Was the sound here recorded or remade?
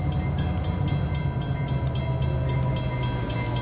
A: recorded